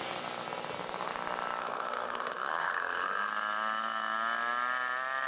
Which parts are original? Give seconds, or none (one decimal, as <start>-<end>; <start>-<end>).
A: 0.0-1.6; 3.3-5.3